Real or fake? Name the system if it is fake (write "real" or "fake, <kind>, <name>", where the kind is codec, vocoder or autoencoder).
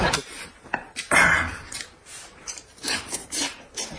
fake, vocoder, BigVGAN v2